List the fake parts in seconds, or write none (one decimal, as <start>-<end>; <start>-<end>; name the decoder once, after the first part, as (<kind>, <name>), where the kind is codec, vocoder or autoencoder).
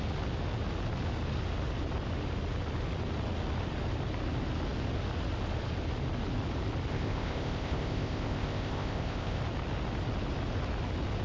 6.9-9.4 (codec, ZipCodec)